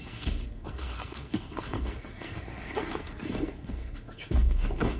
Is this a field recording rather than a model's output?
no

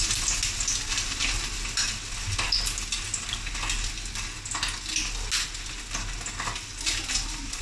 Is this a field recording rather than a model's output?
yes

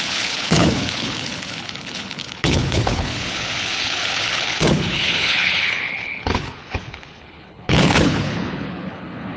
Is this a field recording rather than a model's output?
no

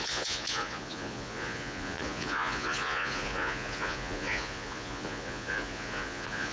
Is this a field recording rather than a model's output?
no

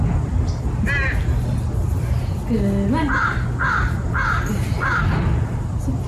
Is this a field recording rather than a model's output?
yes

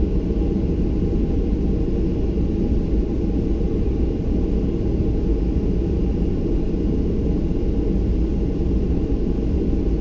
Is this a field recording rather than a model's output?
yes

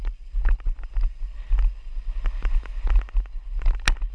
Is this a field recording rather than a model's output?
yes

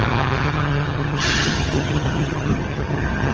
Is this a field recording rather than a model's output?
no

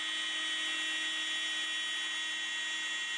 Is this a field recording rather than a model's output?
yes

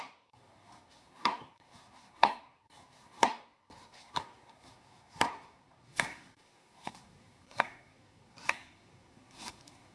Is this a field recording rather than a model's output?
no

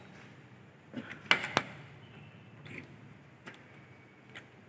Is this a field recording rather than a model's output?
yes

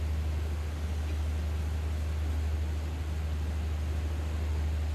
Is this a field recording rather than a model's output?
yes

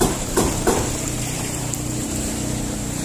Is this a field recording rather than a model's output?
no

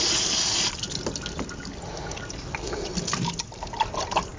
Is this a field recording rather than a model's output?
yes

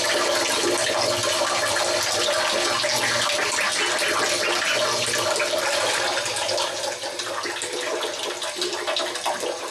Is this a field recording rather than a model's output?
yes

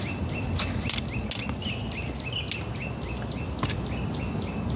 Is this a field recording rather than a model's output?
yes